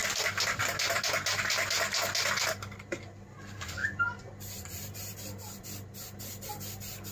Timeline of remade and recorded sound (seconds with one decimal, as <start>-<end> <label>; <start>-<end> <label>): 0.0-7.1 recorded

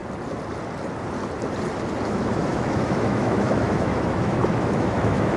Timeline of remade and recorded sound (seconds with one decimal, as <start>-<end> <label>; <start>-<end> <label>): 0.0-2.1 recorded; 2.1-5.4 remade